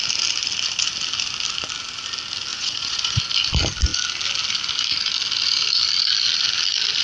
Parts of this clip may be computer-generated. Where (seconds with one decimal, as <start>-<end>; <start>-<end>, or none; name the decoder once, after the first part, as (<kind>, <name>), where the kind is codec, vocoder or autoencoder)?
2.5-3.2 (vocoder, Vocos)